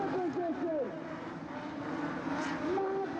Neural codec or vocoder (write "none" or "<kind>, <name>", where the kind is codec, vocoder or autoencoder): none